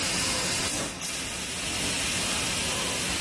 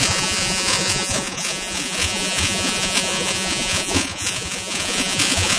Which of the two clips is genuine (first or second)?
first